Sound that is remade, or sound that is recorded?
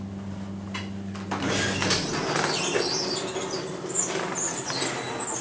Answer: recorded